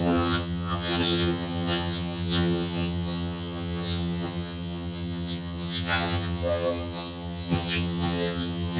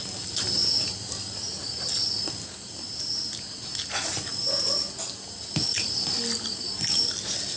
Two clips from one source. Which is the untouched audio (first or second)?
second